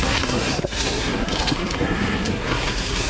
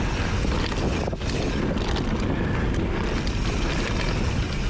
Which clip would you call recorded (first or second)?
second